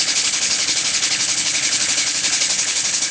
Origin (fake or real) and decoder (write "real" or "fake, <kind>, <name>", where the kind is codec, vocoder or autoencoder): fake, codec, HILCodec